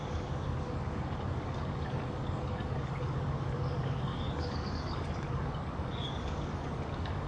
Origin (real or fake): fake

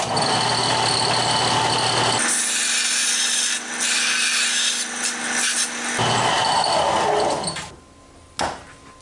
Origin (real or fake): real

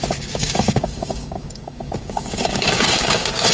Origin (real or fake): fake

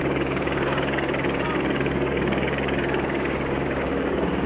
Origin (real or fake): fake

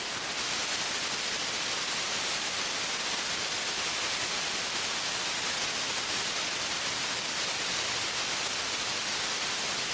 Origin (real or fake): real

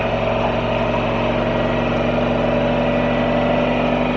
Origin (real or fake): real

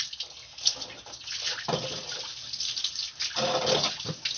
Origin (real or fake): real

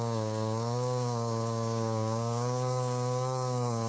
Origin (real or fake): fake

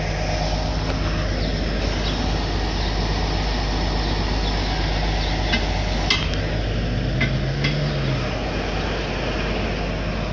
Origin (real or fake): real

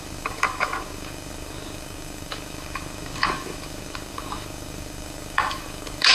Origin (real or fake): fake